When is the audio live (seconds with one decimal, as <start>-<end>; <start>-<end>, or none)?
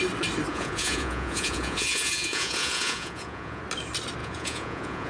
0.0-0.5; 3.6-4.2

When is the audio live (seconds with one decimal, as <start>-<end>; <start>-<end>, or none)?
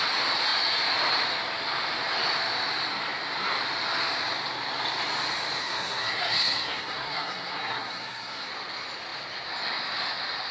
0.0-5.6; 8.5-10.5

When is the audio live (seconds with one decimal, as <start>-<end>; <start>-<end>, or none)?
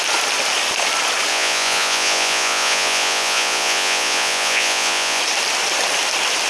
0.0-1.3; 5.2-6.5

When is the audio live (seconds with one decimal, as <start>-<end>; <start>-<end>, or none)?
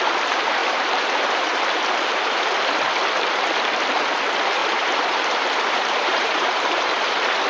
0.0-0.6; 1.6-4.6; 6.9-7.5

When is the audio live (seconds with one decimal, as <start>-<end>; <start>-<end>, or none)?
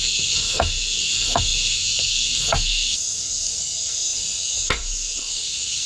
none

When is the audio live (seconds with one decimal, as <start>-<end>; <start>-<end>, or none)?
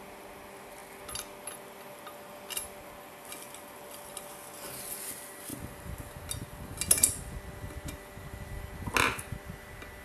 0.0-10.0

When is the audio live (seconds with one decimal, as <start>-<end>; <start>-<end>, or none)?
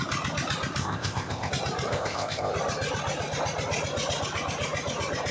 0.0-0.8; 1.5-1.9; 2.5-5.3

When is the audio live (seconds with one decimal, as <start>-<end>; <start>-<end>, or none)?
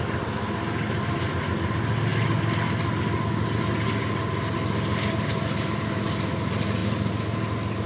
0.0-7.9